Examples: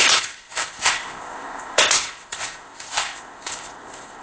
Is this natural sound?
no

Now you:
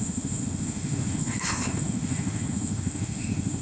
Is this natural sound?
no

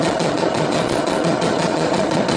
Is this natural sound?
no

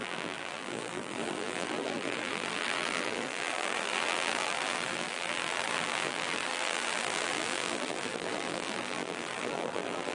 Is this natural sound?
no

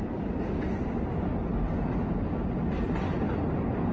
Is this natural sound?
yes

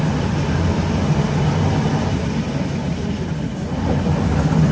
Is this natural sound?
yes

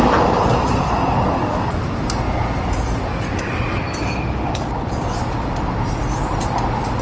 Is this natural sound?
yes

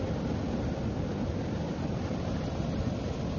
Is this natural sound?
yes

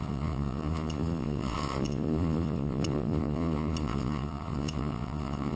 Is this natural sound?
no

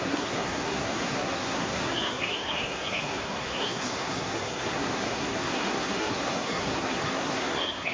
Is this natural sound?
no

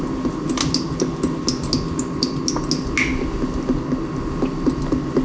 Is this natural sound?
yes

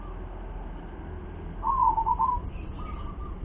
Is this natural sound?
yes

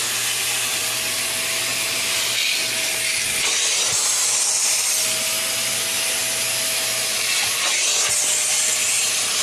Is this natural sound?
yes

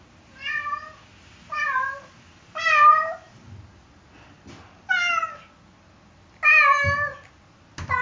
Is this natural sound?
yes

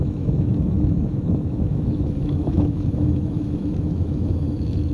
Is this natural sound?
no